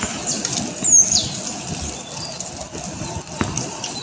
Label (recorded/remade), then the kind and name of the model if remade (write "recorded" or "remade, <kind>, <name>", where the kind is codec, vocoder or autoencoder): recorded